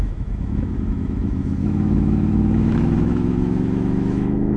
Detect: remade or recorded remade